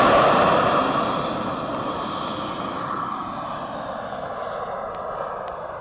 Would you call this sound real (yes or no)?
yes